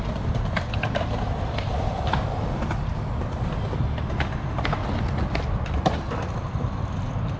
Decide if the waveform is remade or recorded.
recorded